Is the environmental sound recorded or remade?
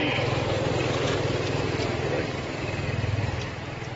remade